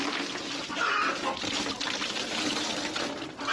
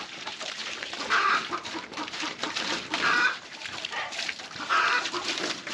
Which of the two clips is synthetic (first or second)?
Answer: second